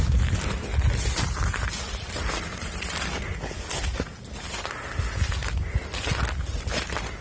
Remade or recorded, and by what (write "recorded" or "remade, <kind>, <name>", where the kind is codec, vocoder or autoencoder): recorded